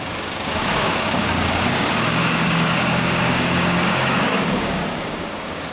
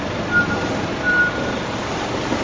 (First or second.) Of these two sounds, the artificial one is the first